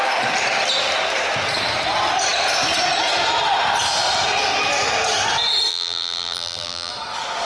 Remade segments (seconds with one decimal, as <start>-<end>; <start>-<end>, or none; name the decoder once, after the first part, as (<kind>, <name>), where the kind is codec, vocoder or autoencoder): 5.7-6.9 (vocoder, BigVGAN v2)